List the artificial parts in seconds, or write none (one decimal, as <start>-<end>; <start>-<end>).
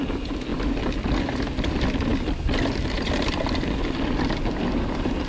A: none